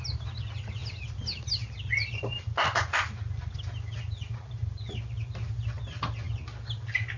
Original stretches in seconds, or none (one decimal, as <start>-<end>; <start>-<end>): 0.0-7.2